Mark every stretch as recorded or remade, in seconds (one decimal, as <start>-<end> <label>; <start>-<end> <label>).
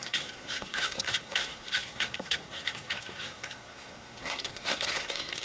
0.0-5.4 remade